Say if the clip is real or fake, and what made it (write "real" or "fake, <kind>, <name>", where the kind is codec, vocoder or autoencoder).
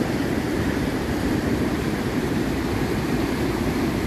fake, vocoder, BigVGAN v2